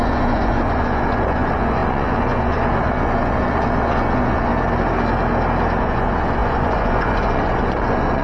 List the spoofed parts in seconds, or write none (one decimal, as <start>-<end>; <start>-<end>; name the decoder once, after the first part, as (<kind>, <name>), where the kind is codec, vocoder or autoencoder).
0.0-4.5 (vocoder, Vocos); 5.8-8.2